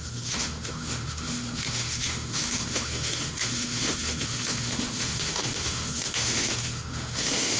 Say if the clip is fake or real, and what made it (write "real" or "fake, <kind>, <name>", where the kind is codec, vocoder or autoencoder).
fake, autoencoder, DAC-VAE